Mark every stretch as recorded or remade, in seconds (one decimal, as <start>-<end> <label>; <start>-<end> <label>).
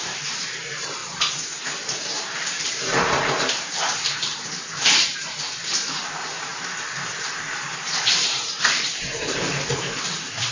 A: 0.0-6.5 remade; 6.5-8.1 recorded; 8.1-10.5 remade